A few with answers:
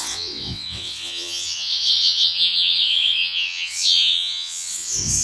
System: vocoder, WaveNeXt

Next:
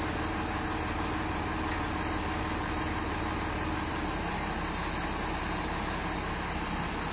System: none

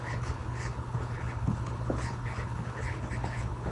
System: codec, HILCodec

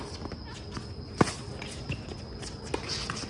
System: none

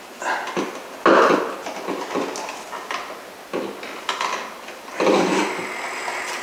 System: none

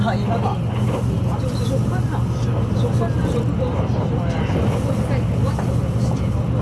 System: none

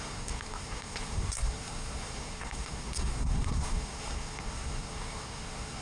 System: codec, SNAC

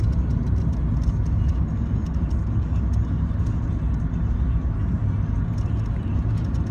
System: none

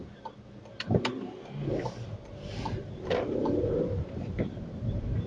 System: vocoder, BigVGAN v2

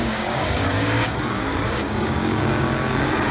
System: codec, DAC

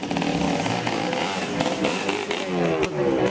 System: none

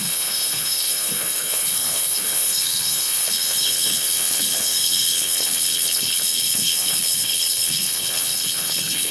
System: codec, HILCodec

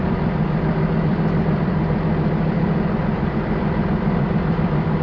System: vocoder, BigVGAN v2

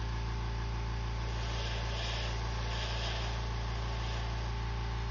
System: none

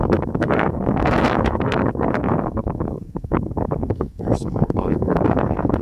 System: codec, SNAC